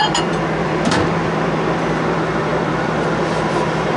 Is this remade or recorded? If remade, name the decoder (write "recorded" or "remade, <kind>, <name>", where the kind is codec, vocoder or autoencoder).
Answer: remade, vocoder, BigVGAN v2